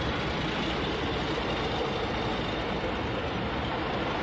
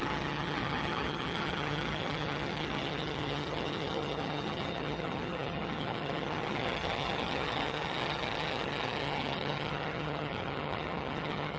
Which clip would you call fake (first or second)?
second